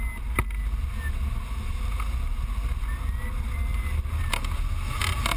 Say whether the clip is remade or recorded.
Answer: recorded